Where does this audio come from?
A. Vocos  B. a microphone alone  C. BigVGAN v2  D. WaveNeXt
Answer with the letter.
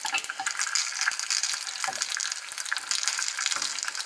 B